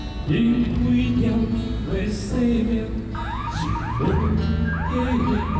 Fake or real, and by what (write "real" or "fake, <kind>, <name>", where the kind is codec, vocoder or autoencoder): real